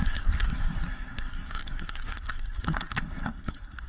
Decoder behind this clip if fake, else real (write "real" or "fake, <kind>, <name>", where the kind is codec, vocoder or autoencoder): fake, codec, SNAC